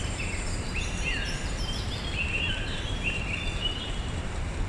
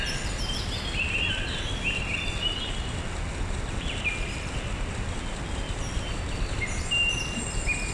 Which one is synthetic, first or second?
first